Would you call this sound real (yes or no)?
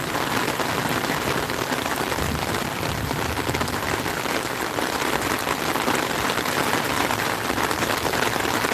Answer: no